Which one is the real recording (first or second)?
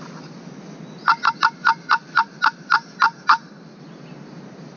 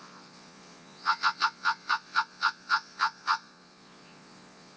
first